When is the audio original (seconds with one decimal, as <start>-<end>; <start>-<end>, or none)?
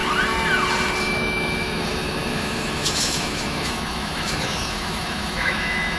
0.0-1.0